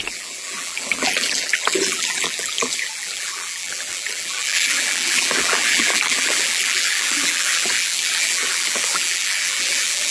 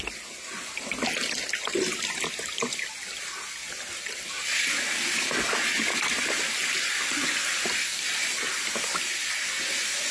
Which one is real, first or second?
second